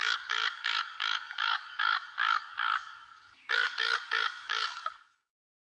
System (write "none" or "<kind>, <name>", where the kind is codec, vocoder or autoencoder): codec, DAC